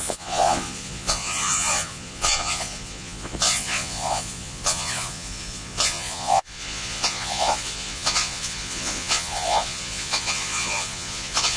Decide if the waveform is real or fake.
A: fake